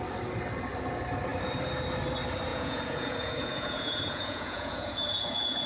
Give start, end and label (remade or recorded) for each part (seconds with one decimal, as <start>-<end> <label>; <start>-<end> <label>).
0.0-2.5 recorded; 2.5-5.7 remade